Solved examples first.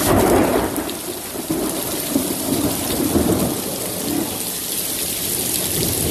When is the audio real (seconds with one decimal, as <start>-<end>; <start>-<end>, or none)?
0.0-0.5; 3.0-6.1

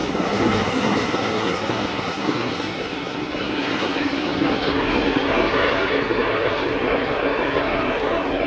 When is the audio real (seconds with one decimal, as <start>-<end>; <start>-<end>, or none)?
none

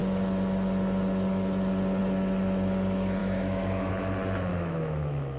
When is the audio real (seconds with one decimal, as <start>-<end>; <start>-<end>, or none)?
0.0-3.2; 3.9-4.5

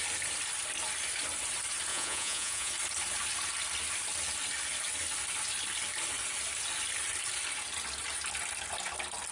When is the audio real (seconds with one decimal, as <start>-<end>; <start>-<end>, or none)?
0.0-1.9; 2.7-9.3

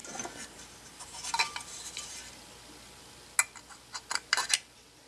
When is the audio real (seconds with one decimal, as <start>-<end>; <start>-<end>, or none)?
0.0-5.1

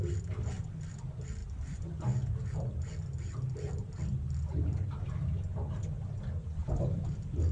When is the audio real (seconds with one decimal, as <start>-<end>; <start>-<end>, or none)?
0.0-6.6